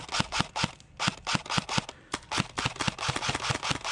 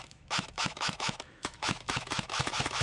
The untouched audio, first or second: first